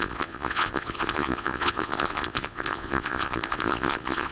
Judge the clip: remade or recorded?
remade